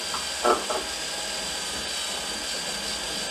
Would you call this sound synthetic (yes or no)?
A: no